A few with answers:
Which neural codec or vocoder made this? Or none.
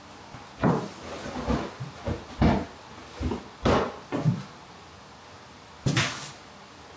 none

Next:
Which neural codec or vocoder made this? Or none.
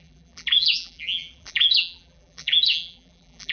vocoder, BigVGAN v2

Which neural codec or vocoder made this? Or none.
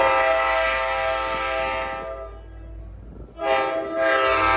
none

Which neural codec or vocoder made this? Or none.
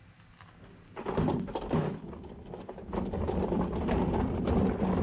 none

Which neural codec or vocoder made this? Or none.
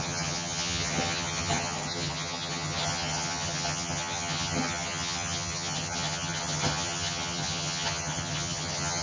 vocoder, HiFi-GAN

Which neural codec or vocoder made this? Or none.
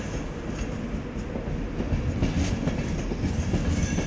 none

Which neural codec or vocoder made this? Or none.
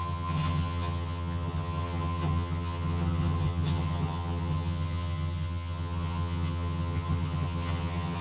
vocoder, HiFi-GAN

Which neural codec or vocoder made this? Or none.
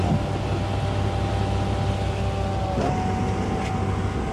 none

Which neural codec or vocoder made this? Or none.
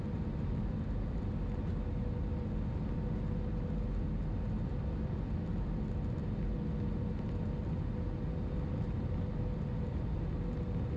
none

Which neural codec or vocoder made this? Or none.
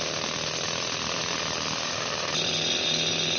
none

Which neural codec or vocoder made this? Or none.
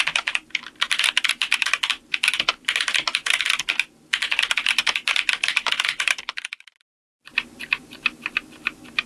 none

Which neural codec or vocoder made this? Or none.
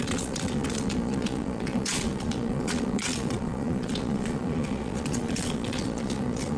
vocoder, Vocos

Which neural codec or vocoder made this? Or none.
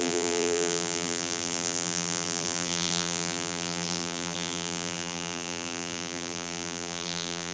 vocoder, BigVGAN v2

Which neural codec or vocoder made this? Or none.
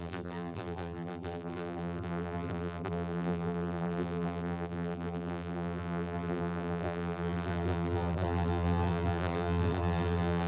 vocoder, BigVGAN v2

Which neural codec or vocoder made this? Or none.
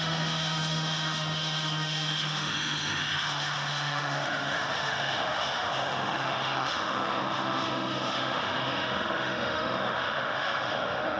autoencoder, DAC-VAE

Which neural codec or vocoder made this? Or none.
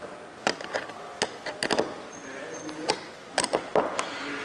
none